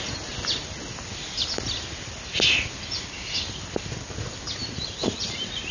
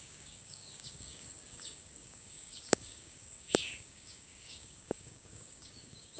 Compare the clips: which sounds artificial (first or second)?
second